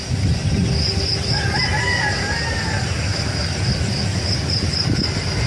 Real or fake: real